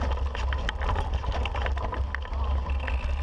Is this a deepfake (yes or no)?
no